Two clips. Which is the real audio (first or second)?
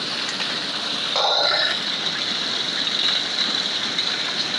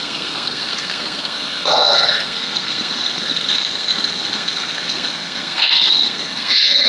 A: first